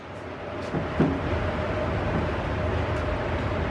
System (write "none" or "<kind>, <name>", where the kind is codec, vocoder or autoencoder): none